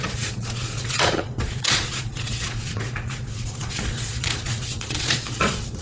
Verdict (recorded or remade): remade